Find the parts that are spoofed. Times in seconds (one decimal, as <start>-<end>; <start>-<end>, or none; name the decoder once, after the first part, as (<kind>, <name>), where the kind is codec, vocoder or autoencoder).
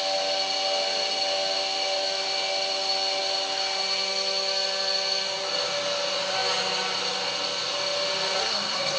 8.4-9.0 (codec, SNAC)